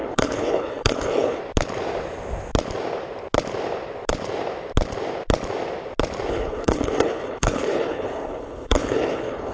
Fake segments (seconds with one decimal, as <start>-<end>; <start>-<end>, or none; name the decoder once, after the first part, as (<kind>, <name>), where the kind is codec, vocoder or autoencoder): 0.0-1.4 (codec, HILCodec); 6.3-9.5